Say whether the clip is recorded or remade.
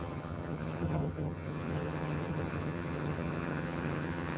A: remade